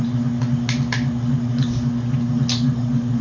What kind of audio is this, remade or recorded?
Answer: recorded